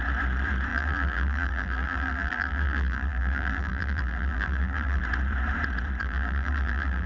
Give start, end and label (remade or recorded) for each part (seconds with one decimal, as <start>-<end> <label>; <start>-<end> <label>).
0.0-0.7 recorded; 0.7-5.0 remade; 5.0-6.0 recorded; 6.0-7.1 remade